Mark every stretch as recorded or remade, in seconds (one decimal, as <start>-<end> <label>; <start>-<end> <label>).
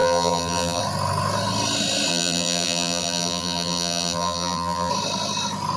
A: 0.0-0.8 remade; 0.8-2.1 recorded; 2.1-4.9 remade; 4.9-5.8 recorded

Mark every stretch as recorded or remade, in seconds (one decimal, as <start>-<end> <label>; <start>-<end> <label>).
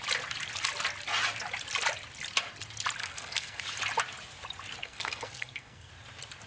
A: 0.0-3.0 recorded; 3.0-3.6 remade; 3.6-4.8 recorded; 4.8-5.9 remade; 5.9-6.5 recorded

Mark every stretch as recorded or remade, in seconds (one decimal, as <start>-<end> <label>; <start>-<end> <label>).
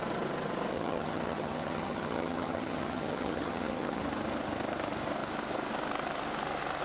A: 0.0-0.7 recorded; 0.7-4.0 remade; 4.0-6.8 recorded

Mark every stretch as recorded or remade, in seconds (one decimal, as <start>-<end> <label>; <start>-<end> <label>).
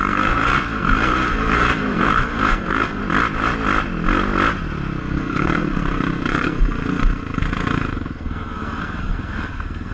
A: 0.0-3.0 remade; 3.0-5.0 recorded; 5.0-9.9 remade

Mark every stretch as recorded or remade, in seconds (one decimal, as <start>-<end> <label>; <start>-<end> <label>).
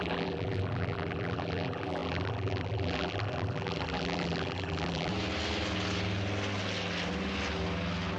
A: 0.0-5.1 remade; 5.1-8.2 recorded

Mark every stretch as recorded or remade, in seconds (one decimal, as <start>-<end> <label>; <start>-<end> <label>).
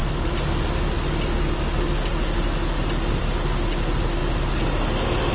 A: 0.0-5.3 recorded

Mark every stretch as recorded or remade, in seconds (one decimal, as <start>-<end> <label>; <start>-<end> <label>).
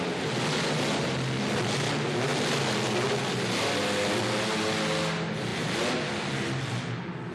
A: 0.0-7.3 recorded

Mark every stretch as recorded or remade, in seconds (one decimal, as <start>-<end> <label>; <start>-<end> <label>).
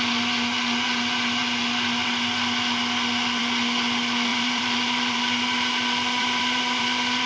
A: 0.0-4.3 recorded; 4.3-7.3 remade